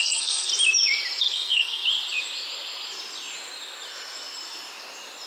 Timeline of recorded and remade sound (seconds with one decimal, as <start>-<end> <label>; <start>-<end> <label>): 0.0-0.5 remade; 0.5-1.2 recorded; 1.2-1.8 remade; 1.8-5.3 recorded